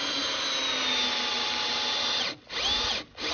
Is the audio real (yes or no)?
yes